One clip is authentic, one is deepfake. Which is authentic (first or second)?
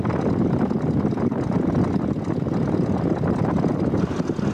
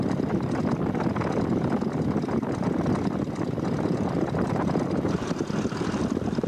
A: first